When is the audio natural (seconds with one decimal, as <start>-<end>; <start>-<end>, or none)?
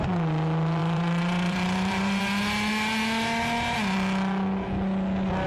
0.0-0.8; 2.2-5.5